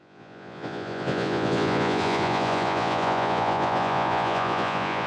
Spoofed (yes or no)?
yes